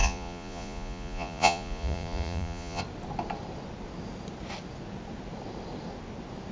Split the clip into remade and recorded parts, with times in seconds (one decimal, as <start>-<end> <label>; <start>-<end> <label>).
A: 0.0-2.8 remade; 2.8-6.5 recorded